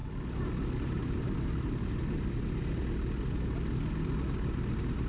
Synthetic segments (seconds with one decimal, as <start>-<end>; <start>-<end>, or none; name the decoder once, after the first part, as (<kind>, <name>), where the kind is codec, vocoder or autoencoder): none